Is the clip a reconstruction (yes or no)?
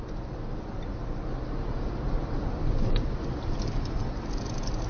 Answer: no